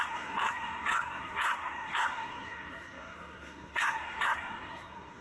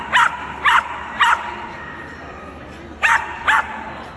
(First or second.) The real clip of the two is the second